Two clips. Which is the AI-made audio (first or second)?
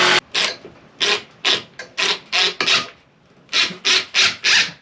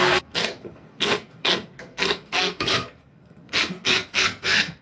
second